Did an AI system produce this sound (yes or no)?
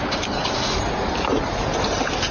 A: no